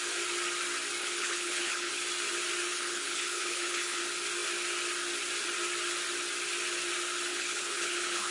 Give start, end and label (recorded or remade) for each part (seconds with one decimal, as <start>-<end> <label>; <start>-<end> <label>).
0.0-1.0 recorded; 1.0-1.9 remade; 1.9-2.7 recorded; 2.7-4.0 remade; 4.0-7.3 recorded; 7.3-8.3 remade